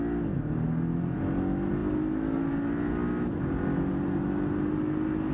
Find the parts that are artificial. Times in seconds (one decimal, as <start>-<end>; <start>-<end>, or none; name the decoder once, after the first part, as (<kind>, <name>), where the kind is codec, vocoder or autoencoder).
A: none